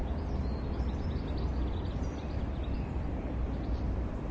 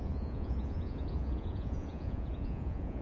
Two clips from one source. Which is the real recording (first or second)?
first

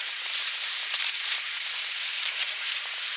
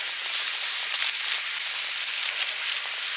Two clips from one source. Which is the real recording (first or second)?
second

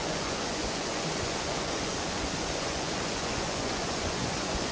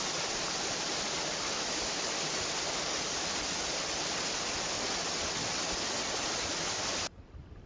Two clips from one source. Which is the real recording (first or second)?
second